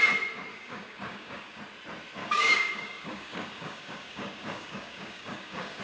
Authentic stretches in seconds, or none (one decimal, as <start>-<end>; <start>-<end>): 0.0-0.5; 1.6-2.2